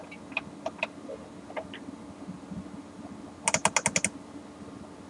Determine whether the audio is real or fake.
real